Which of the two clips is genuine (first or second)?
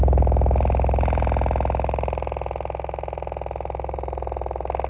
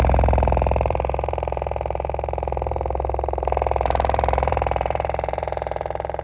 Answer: first